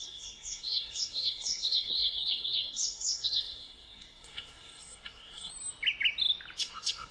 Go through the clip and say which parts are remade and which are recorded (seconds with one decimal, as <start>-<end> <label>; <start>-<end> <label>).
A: 0.0-5.5 remade; 5.5-6.6 recorded; 6.6-7.1 remade